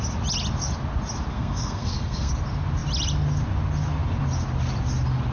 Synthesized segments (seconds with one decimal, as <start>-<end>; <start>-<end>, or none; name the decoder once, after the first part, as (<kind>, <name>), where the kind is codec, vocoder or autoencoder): 1.3-2.3 (codec, SNAC)